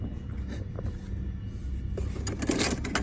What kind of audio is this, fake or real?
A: real